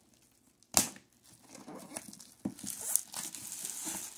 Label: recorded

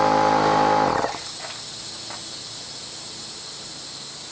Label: recorded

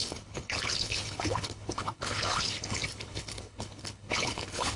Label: remade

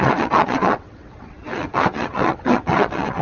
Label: remade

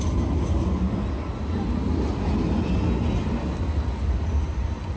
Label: recorded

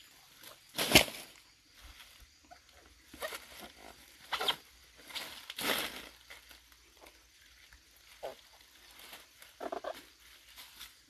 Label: recorded